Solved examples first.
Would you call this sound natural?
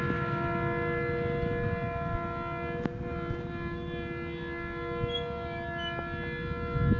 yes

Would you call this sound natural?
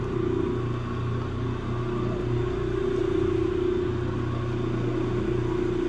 yes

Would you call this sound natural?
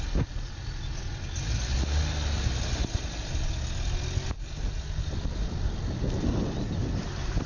yes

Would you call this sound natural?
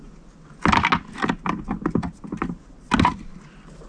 yes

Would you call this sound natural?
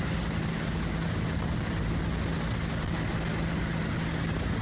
yes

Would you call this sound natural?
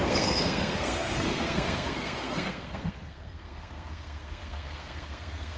no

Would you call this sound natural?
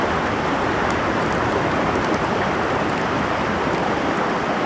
yes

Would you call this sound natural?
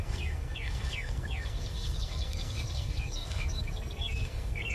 no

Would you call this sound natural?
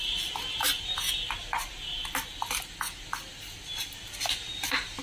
yes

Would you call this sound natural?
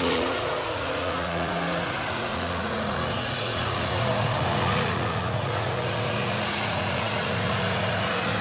no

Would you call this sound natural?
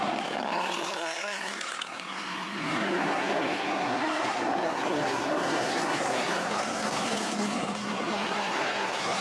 no